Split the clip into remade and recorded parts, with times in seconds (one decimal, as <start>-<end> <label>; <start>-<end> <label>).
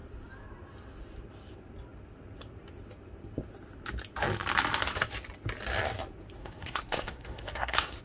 0.0-6.4 recorded; 6.4-8.0 remade